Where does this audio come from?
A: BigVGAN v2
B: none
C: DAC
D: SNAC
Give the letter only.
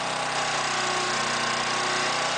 B